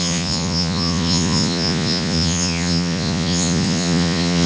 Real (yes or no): no